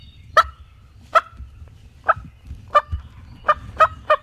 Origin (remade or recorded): remade